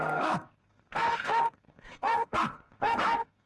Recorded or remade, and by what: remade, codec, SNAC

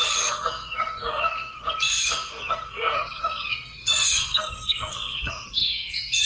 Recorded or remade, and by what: remade, codec, SNAC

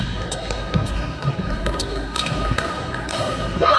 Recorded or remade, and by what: remade, codec, SNAC